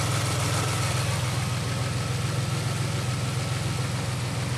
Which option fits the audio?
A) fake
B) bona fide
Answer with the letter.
B